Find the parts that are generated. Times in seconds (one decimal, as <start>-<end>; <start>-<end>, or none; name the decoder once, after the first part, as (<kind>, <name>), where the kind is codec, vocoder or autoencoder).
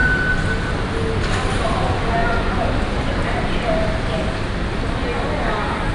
2.2-2.7 (vocoder, Vocos)